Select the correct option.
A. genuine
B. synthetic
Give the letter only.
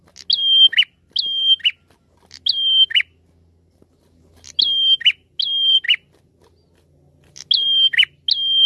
A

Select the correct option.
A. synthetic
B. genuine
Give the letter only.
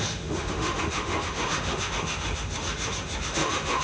A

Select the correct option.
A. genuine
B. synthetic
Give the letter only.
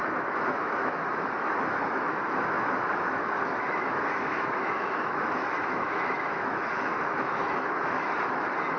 B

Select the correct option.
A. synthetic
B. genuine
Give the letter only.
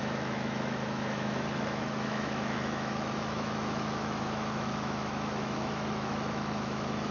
A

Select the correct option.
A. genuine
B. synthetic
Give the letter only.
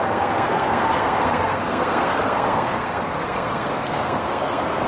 B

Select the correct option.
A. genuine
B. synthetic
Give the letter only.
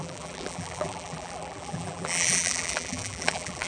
B